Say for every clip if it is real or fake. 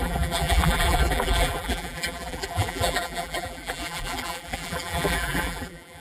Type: fake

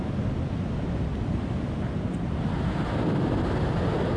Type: real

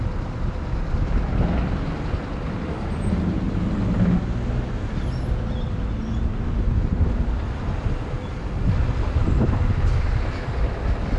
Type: real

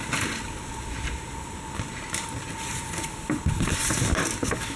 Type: real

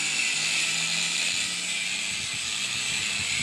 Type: real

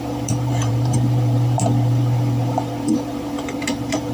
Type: fake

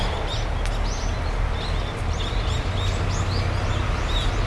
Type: real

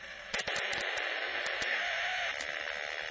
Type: fake